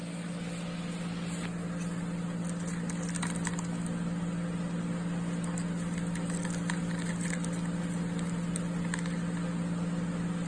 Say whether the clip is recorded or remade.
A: recorded